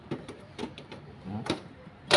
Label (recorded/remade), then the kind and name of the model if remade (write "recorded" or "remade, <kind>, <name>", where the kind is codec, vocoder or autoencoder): remade, vocoder, BigVGAN v2